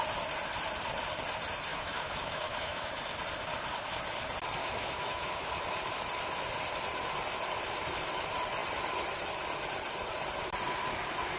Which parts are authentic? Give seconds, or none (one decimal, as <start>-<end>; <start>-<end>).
0.0-1.7; 2.9-4.6; 5.5-11.4